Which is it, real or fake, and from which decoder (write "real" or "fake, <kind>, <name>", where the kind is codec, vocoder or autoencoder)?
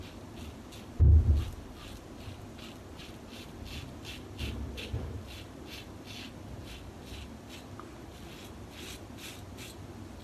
real